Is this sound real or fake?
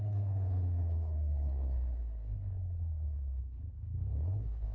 fake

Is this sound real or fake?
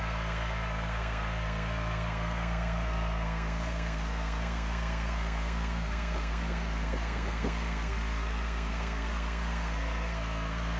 fake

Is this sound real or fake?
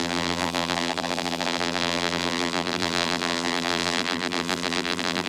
fake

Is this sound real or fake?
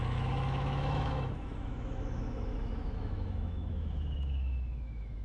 fake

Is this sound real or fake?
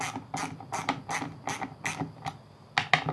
real